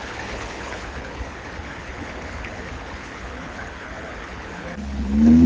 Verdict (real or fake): fake